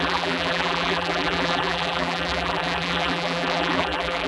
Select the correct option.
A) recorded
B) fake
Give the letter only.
B